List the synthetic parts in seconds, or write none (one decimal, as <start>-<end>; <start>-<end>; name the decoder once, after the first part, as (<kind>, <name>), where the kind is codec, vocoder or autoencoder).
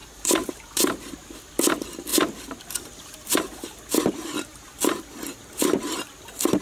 0.0-1.3 (vocoder, BigVGAN v2); 2.1-4.8